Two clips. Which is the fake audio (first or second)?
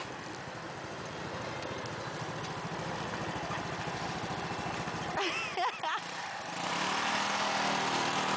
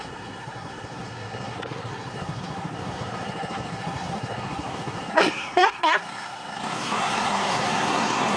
second